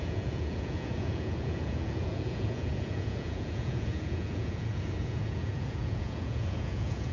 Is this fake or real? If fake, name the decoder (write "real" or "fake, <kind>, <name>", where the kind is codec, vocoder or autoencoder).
fake, vocoder, Vocos